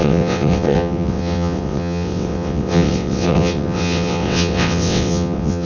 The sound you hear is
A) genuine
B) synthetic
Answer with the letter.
B